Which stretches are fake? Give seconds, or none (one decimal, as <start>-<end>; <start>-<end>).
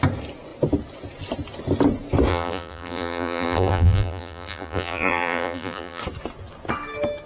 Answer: 2.3-6.0